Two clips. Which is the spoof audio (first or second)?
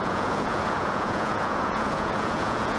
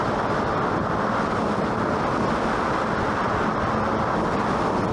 first